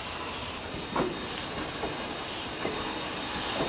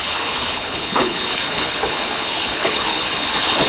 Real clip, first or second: first